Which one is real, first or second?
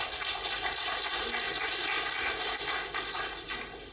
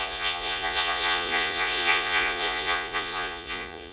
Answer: first